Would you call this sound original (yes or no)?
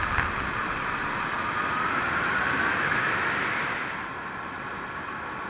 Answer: yes